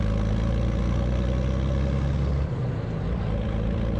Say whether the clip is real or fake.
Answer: real